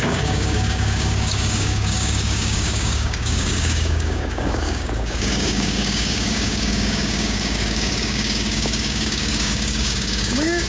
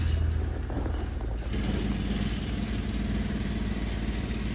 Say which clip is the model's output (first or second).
first